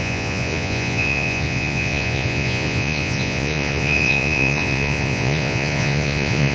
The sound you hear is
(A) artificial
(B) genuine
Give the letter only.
A